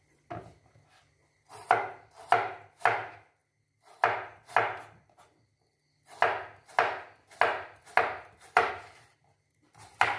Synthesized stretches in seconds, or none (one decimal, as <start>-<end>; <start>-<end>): none